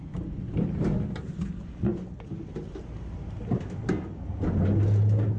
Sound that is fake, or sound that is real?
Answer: real